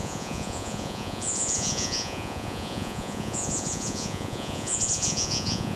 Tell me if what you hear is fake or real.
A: fake